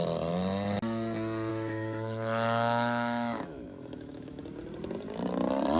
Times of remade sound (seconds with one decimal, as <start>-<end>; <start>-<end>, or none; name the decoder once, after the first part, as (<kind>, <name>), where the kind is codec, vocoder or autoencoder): 1.5-4.4 (autoencoder, DAC-VAE)